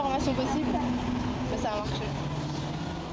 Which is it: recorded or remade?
recorded